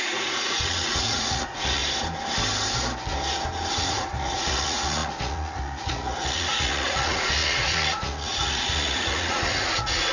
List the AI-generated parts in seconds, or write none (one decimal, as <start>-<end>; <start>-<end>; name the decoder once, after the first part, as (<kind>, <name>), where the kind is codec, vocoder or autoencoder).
0.0-1.8 (vocoder, Vocos); 3.7-10.1